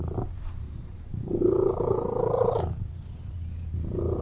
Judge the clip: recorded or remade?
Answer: remade